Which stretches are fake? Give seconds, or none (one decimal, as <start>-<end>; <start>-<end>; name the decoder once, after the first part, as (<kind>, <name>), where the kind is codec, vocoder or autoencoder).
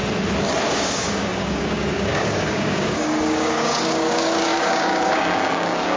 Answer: 0.6-6.0 (codec, DAC)